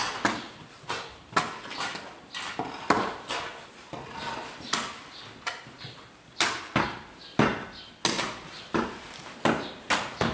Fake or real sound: real